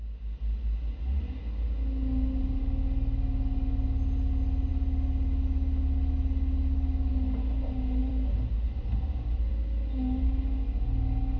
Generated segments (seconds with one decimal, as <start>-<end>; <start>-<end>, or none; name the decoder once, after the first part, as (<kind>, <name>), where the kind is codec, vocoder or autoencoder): 8.0-9.5 (vocoder, BigVGAN v2)